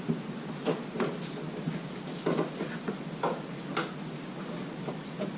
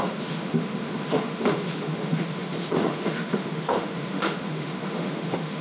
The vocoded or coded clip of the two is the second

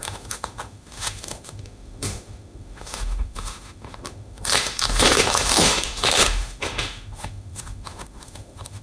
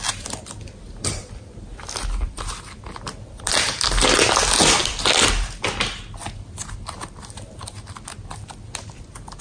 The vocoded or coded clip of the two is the first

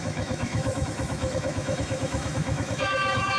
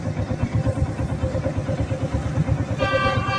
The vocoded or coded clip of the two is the first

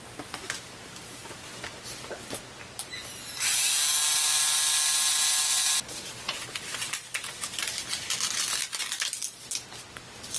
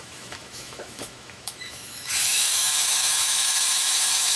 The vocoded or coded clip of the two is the second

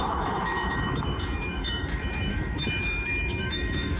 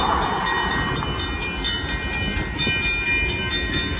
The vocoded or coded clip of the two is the first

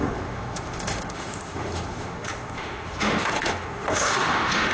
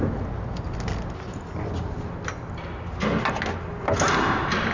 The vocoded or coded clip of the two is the first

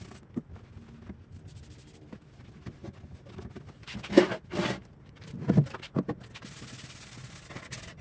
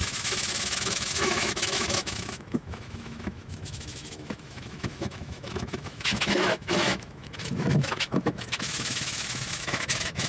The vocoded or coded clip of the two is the second